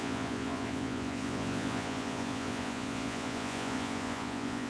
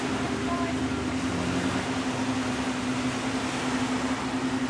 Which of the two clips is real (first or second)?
second